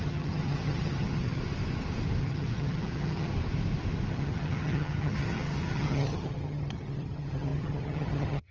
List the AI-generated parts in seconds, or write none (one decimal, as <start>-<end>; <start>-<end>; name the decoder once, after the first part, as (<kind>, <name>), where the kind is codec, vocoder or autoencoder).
0.0-1.4 (vocoder, HiFi-GAN); 2.2-3.3; 4.1-8.5